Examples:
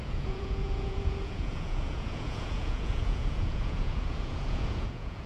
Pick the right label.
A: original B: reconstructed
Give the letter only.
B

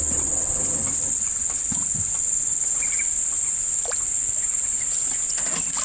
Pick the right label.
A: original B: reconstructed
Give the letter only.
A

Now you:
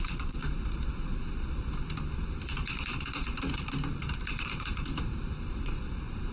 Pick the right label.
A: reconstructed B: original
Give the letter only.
A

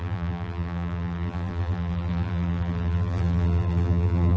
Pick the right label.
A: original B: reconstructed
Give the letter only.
B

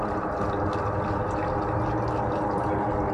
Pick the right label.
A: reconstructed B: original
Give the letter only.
B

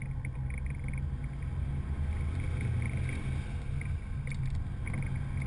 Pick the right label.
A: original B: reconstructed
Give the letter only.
A